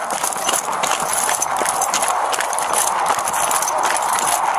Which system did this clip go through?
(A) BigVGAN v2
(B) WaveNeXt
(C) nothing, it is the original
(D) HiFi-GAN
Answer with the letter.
A